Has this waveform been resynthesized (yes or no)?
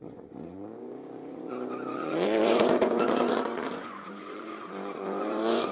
yes